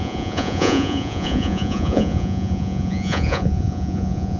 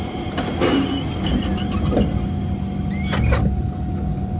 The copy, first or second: first